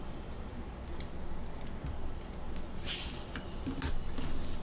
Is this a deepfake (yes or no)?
no